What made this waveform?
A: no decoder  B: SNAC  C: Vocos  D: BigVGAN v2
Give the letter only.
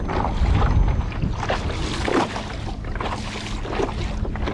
A